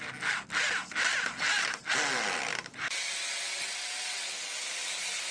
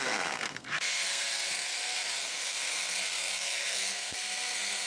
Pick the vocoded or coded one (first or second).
second